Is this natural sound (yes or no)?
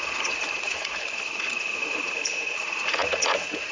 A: no